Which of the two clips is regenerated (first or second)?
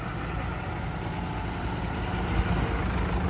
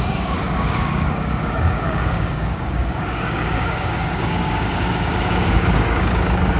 second